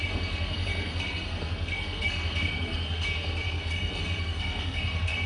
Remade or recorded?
remade